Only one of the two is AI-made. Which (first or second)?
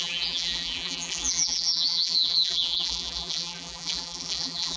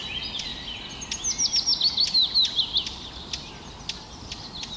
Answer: first